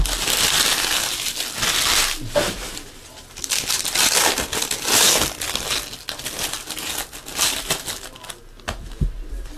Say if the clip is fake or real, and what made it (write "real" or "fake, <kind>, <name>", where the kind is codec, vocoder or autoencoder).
real